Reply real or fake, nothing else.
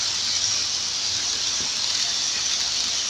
real